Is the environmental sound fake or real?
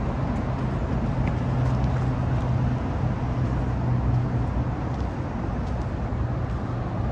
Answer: real